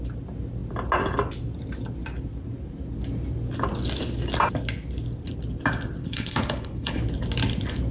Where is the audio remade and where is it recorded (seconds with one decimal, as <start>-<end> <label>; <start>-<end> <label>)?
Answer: 0.0-6.0 recorded; 6.0-7.0 remade; 7.0-7.9 recorded